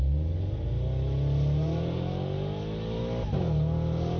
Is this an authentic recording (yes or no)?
yes